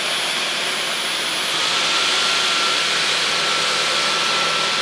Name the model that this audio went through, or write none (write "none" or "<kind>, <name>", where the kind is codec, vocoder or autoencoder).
none